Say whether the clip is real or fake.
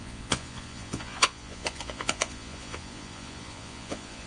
fake